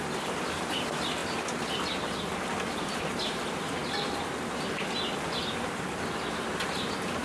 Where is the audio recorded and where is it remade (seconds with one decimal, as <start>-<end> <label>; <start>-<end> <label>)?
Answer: 0.0-7.2 recorded